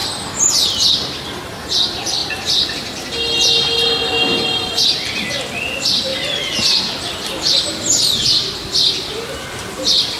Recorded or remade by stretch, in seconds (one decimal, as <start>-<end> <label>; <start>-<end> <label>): 0.0-2.2 remade; 2.2-5.6 recorded; 5.6-6.1 remade; 6.1-7.0 recorded; 7.0-10.2 remade